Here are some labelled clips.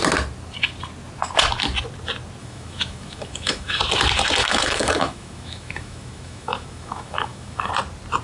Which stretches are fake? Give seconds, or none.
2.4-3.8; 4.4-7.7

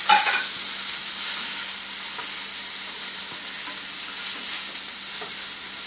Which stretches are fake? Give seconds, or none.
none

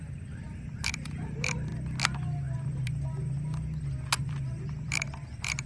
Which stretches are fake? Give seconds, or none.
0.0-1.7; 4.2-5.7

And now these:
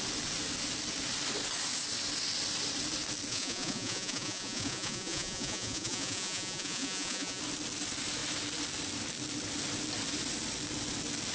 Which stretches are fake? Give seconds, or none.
3.3-7.4